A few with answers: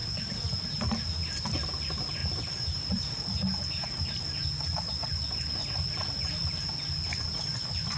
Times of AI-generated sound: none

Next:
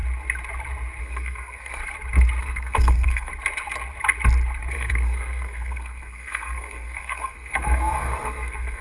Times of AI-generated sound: 1.0-1.8 (codec, SNAC); 2.4-3.3; 4.7-8.8

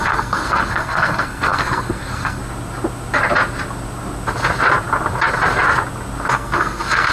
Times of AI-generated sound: 0.0-2.4 (codec, SNAC); 6.3-7.1

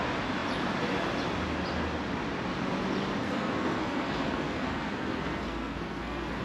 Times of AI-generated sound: 3.2-6.4 (codec, SNAC)

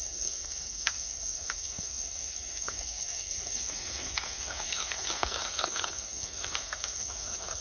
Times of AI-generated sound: 0.0-7.6 (codec, SNAC)

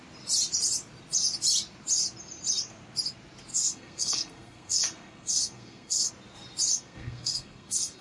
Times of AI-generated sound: 3.5-6.1 (codec, SNAC); 6.7-8.0

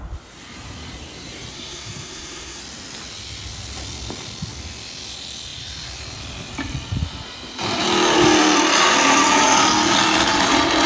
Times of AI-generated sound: 1.5-2.6 (codec, SNAC)

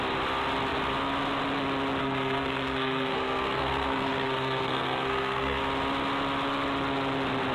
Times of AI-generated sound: 2.0-5.6 (codec, SNAC)